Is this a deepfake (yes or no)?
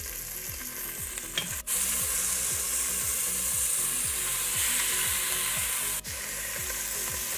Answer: no